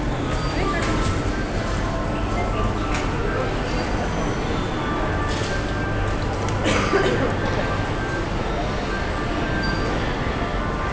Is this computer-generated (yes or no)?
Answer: no